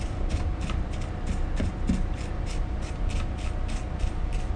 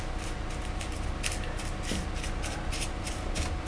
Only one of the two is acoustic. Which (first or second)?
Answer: second